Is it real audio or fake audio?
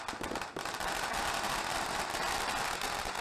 real